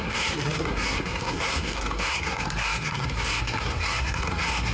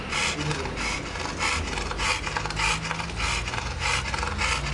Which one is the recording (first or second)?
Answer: second